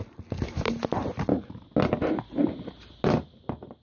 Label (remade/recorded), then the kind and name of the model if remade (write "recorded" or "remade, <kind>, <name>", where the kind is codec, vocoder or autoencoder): recorded